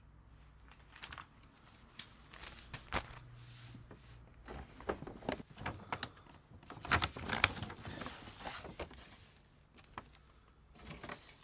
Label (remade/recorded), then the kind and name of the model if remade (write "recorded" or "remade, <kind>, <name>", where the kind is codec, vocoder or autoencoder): recorded